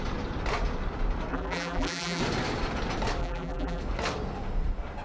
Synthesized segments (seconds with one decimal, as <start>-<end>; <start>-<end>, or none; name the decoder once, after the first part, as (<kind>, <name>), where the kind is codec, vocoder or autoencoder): 1.3-2.2 (vocoder, BigVGAN v2); 3.2-3.8